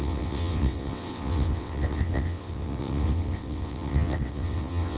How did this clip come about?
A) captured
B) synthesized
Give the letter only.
B